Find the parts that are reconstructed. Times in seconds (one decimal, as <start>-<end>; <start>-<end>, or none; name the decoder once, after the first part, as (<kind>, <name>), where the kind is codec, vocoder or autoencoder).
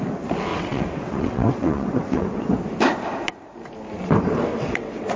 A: 0.5-2.5 (vocoder, WaveNeXt); 4.5-5.2